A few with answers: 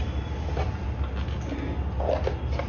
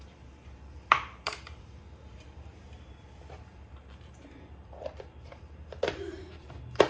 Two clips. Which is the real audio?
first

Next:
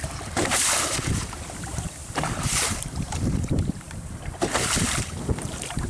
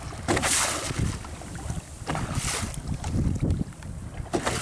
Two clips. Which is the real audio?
second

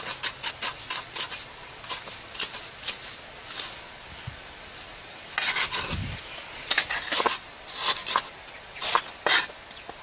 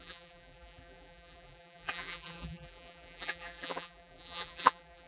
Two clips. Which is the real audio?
first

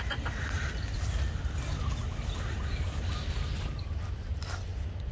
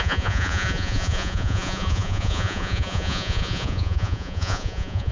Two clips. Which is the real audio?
first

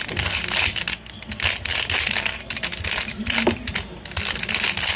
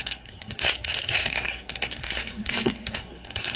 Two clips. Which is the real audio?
first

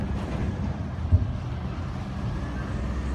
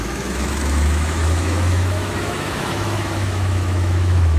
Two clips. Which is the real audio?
first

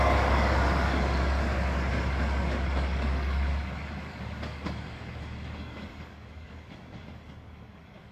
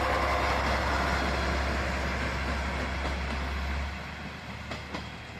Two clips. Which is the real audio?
second